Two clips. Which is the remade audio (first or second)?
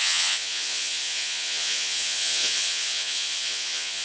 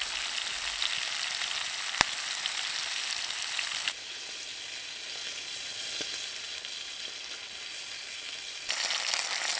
first